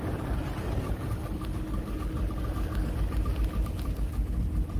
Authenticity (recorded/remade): recorded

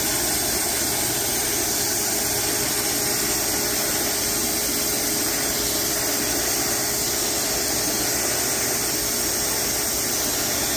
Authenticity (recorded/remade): recorded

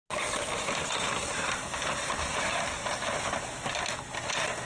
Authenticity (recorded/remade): recorded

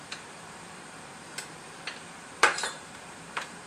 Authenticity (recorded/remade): remade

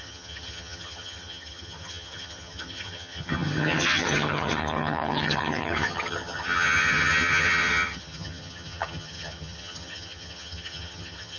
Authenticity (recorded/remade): remade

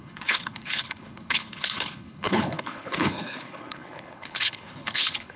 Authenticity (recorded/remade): remade